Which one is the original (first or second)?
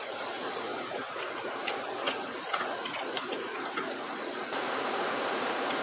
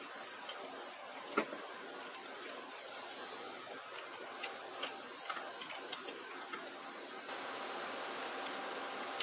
second